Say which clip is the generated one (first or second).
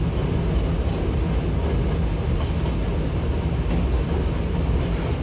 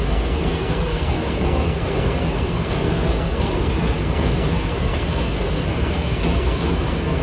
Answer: second